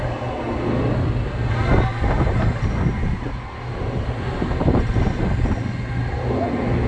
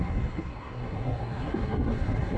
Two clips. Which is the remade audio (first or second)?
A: second